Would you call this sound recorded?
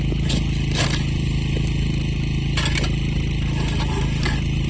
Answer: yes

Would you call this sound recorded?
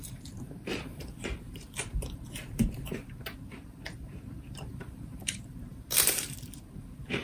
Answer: no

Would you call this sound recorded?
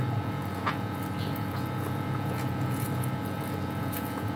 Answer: no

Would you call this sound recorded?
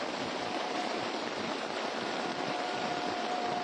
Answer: no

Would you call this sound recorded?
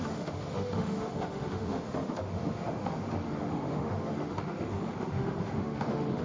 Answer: no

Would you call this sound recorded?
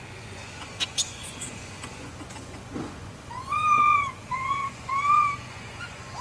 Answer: no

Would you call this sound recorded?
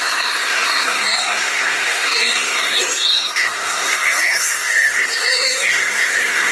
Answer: no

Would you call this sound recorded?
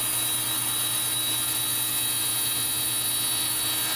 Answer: yes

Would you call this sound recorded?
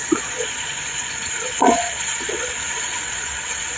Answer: no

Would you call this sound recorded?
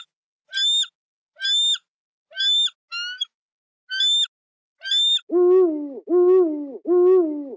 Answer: yes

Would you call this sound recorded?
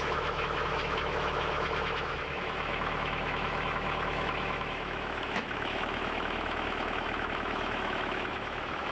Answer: no